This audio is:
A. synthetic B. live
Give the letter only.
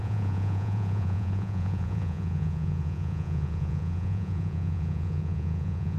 A